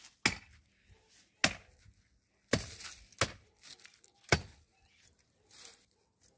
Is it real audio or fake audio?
real